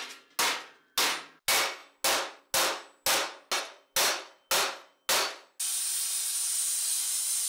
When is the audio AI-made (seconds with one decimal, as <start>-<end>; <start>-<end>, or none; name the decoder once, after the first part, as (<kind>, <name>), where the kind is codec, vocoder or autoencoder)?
none